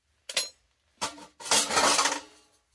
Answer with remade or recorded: recorded